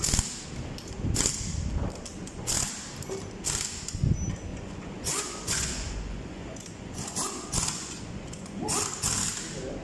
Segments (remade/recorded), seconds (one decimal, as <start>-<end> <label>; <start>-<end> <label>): 0.0-2.2 recorded; 2.2-2.7 remade; 2.7-4.5 recorded; 4.5-8.7 remade; 8.7-9.8 recorded

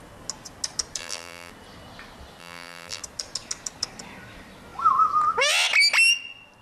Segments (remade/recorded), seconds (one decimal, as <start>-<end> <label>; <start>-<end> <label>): 0.0-1.0 recorded; 1.0-1.5 remade; 1.5-2.4 recorded; 2.4-3.0 remade; 3.0-6.6 recorded

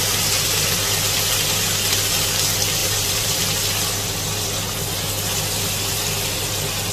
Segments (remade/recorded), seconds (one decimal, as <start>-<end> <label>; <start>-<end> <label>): 0.0-2.8 recorded; 2.8-3.4 remade; 3.4-6.9 recorded

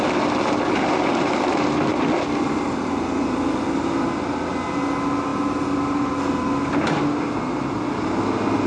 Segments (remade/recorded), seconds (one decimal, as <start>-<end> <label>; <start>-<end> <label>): 0.0-8.7 recorded

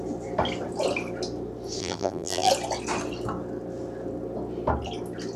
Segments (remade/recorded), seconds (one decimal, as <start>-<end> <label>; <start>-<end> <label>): 0.0-1.8 recorded; 1.8-2.5 remade; 2.5-5.4 recorded